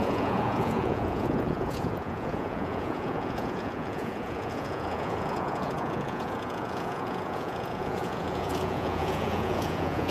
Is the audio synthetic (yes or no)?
yes